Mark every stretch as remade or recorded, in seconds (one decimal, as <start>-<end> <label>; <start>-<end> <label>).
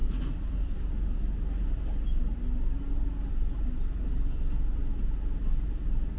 0.0-2.3 remade; 2.3-6.2 recorded